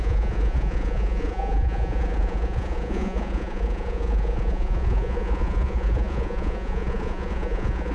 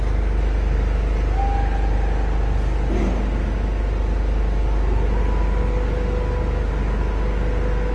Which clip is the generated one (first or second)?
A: first